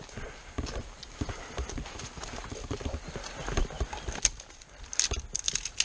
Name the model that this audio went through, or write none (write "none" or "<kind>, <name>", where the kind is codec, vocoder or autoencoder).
none